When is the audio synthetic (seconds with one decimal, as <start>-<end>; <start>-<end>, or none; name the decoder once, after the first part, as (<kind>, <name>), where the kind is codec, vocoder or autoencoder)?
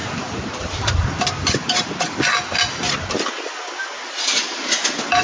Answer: 0.0-2.1 (vocoder, BigVGAN v2)